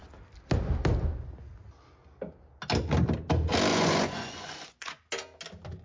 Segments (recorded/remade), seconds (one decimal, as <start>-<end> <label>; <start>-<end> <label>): 0.0-3.7 recorded; 3.7-5.0 remade; 5.0-5.8 recorded